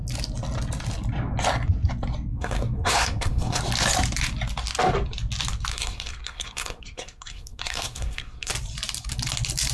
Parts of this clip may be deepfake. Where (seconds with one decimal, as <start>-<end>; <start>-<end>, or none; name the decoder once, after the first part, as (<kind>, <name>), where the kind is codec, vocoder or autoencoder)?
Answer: 2.3-3.6 (codec, SNAC); 5.7-8.5